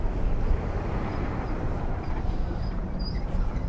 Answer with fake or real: fake